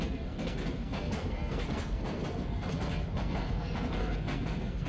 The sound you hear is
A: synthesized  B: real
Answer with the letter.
A